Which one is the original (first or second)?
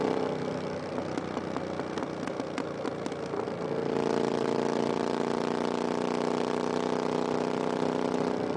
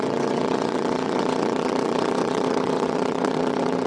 first